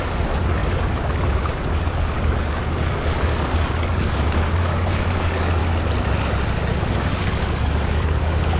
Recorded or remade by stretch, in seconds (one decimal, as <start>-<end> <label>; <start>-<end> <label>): 0.0-5.6 remade; 5.6-6.9 recorded; 6.9-8.6 remade